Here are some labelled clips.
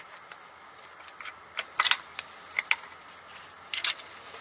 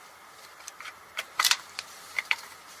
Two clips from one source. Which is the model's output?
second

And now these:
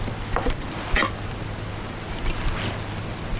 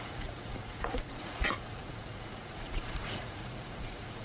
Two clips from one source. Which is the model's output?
second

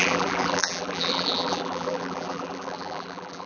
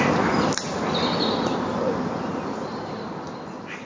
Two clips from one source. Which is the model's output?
first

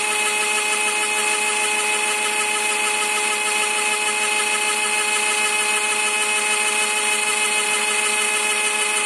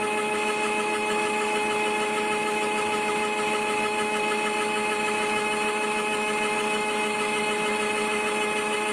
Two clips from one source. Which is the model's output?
second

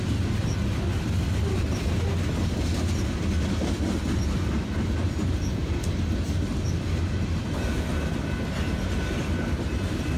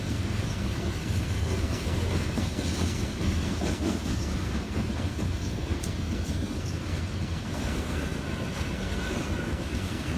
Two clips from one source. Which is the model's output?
second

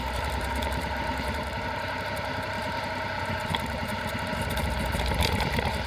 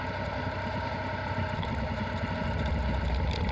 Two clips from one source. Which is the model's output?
first